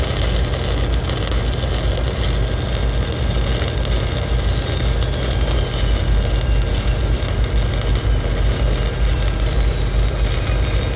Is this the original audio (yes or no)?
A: yes